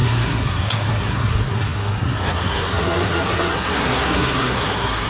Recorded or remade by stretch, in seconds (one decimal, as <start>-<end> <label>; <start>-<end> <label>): 0.0-5.1 remade